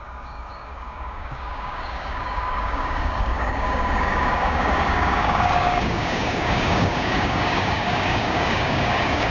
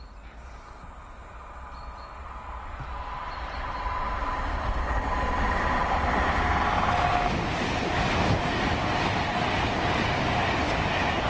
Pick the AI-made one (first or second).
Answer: first